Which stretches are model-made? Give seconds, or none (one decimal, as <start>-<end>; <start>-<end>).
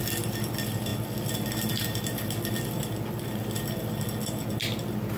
none